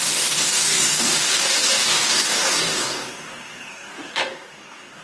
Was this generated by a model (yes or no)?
yes